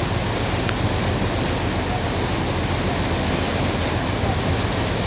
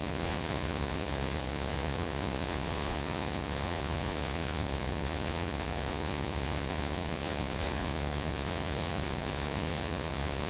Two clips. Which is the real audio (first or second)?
first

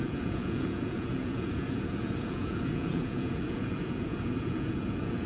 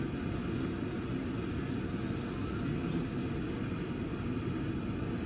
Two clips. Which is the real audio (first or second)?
second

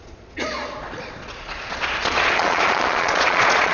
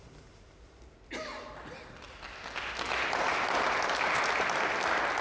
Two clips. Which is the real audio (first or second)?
second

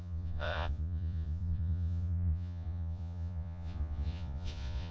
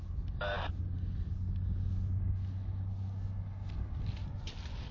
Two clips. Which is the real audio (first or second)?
second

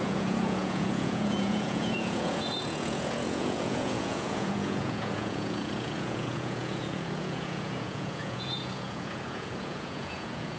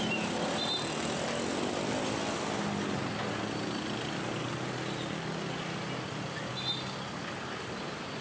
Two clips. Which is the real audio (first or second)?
second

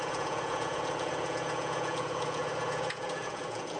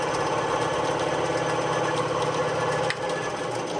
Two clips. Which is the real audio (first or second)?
second